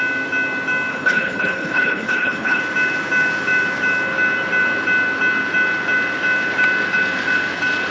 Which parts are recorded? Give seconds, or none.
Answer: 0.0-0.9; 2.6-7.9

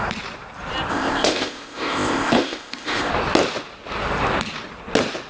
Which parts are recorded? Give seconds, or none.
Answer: 0.0-0.9; 3.1-5.3